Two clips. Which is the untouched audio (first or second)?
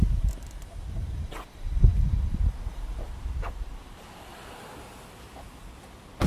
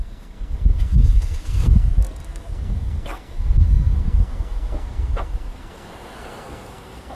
first